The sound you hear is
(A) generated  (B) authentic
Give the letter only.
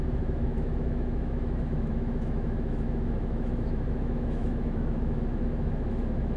A